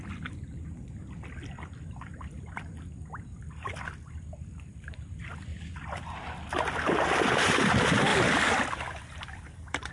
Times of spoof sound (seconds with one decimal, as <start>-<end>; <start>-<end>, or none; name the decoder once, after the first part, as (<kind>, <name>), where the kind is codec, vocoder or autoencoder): 0.0-5.5 (vocoder, BigVGAN v2); 7.3-9.9